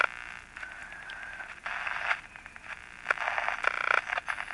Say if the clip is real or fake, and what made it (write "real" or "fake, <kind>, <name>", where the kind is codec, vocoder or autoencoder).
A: real